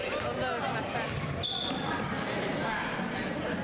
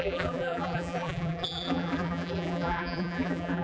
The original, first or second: first